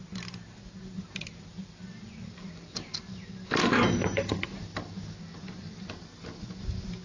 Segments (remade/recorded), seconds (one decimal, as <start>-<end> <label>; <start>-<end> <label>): 0.0-1.5 recorded; 1.5-5.7 remade; 5.7-7.0 recorded